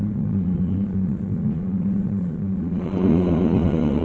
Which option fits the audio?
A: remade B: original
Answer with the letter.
A